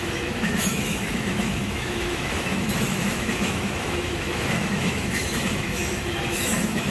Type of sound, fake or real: fake